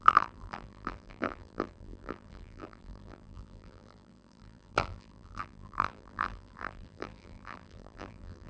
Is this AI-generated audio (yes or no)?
yes